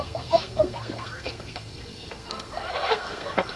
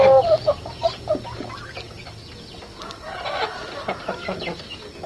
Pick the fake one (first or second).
first